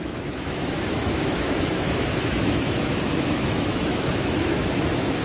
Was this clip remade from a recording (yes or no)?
yes